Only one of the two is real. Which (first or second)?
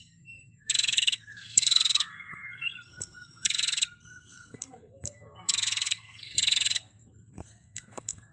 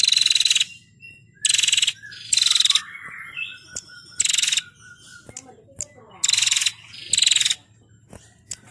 second